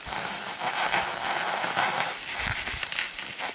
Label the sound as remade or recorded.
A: recorded